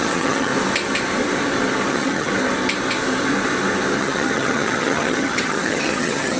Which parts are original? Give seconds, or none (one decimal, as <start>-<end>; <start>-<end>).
0.5-1.9; 2.3-4.0